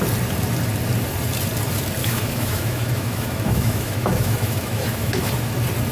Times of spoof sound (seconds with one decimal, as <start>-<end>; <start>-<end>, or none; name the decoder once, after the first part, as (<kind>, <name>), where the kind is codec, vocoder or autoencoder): 2.0-5.5 (autoencoder, DAC-VAE)